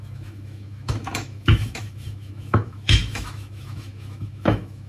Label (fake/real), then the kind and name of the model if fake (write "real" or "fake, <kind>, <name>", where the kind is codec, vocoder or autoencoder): fake, autoencoder, DAC-VAE